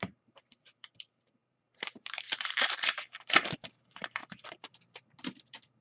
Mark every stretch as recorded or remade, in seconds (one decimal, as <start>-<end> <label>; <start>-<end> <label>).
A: 0.0-5.8 remade